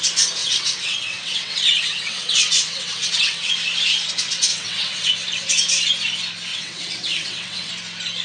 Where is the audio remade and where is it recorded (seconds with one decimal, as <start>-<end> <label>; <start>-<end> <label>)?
0.0-0.4 recorded; 0.4-3.5 remade; 3.5-4.5 recorded; 4.5-5.1 remade; 5.1-6.5 recorded; 6.5-7.7 remade; 7.7-8.2 recorded